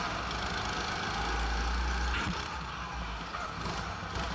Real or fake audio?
real